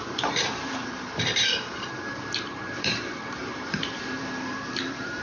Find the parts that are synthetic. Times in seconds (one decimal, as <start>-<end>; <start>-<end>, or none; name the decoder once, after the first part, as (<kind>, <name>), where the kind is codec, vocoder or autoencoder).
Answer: 0.0-5.2 (vocoder, BigVGAN v2)